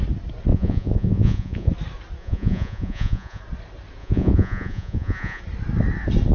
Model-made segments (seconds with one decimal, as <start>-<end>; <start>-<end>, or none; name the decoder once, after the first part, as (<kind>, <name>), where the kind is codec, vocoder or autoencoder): 0.5-1.7 (vocoder, Vocos); 2.2-3.4; 4.0-5.4